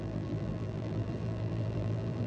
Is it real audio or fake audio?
fake